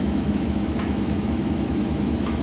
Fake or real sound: fake